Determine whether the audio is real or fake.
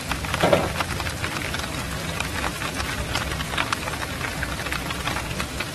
real